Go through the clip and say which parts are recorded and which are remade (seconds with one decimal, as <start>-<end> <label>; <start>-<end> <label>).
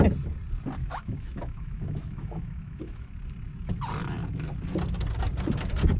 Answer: 0.0-0.8 recorded; 0.8-3.1 remade; 3.1-6.0 recorded